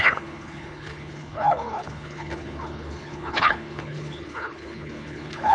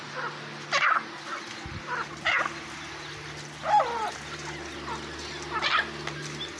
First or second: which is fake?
first